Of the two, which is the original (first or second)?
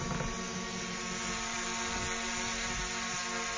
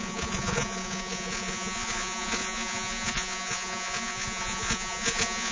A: first